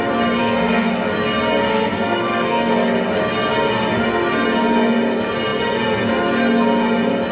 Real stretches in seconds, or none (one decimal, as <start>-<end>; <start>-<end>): 0.0-0.4; 0.9-1.7; 2.7-7.3